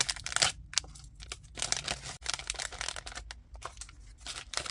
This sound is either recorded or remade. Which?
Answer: recorded